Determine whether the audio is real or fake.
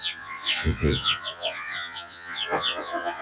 fake